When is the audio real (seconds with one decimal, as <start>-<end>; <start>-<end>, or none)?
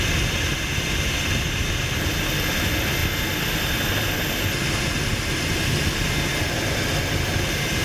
0.0-7.8